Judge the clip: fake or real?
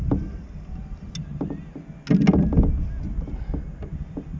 real